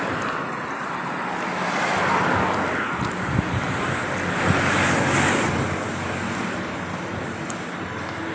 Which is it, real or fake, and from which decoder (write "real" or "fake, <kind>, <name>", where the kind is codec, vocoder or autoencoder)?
real